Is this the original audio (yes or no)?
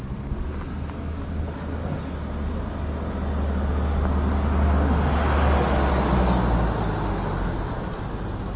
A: yes